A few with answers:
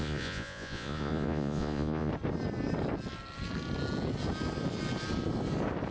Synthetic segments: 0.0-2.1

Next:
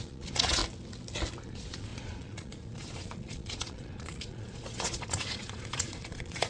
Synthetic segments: 0.0-0.6; 1.4-6.5

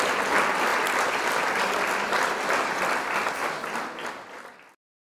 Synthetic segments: none

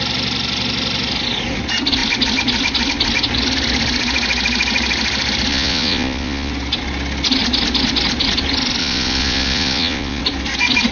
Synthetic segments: 5.5-6.5; 8.8-10.2

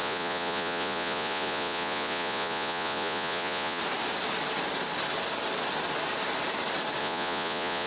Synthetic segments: 0.0-3.8; 7.0-7.9